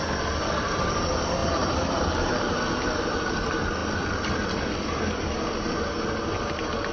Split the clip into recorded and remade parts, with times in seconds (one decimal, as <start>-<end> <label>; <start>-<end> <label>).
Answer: 0.0-1.4 recorded; 1.4-2.6 remade; 2.6-6.9 recorded